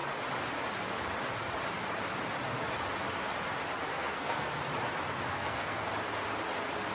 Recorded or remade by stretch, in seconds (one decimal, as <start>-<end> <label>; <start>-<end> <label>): 0.0-3.9 recorded; 3.9-4.5 remade; 4.5-5.3 recorded; 5.3-5.8 remade; 5.8-6.9 recorded